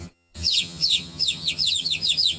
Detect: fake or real fake